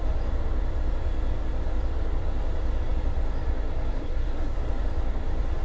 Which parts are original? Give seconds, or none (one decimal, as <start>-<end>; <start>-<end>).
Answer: 0.0-4.0; 4.7-5.6